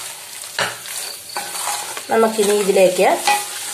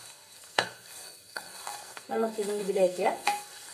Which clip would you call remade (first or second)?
second